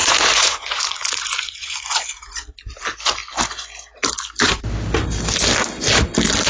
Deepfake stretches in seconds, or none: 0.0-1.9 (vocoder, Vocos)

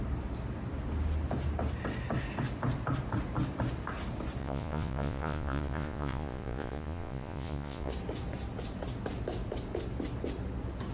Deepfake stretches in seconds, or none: 4.4-7.9 (vocoder, Vocos)

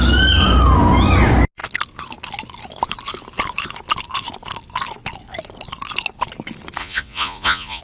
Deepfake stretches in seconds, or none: 6.8-7.8 (vocoder, Vocos)

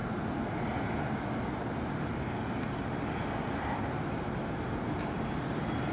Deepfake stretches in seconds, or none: none

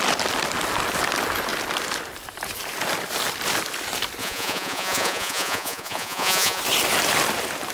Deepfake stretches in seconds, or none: 4.2-6.6 (vocoder, Vocos)

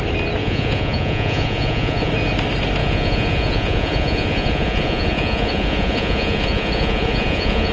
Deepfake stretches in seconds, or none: 0.4-2.1 (vocoder, Vocos); 2.8-7.7

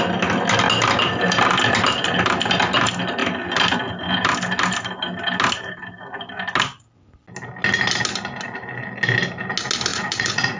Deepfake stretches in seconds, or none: 9.9-10.6 (vocoder, Vocos)